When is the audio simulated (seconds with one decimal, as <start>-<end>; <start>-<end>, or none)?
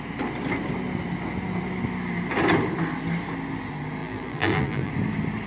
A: 4.0-4.9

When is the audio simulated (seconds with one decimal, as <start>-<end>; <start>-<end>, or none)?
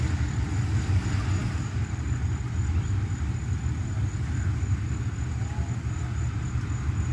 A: none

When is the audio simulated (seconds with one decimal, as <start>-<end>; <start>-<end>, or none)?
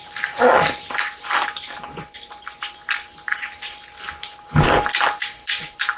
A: none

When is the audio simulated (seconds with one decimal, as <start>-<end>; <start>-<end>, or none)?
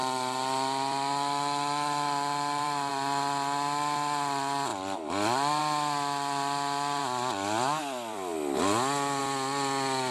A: 0.0-2.9; 4.7-5.6; 7.0-9.2